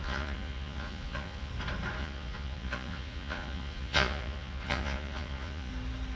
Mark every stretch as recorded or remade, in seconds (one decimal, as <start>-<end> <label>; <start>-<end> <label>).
0.0-1.5 remade; 1.5-2.0 recorded; 2.0-5.7 remade; 5.7-6.2 recorded